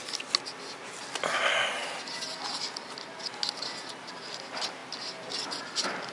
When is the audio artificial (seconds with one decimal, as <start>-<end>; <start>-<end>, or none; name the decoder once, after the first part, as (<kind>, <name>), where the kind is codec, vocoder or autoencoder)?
none